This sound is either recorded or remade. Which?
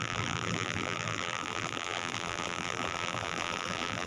remade